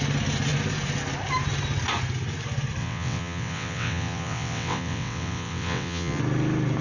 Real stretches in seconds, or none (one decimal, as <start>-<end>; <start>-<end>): 0.0-2.8; 6.2-6.8